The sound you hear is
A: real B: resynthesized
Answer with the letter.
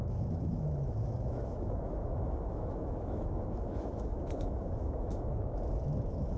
B